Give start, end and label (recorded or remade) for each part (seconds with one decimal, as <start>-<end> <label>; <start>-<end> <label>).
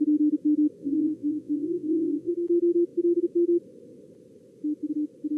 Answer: 0.0-0.8 recorded; 0.8-2.3 remade; 2.3-5.4 recorded